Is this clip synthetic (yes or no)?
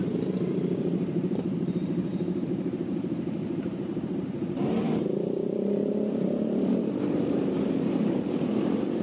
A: yes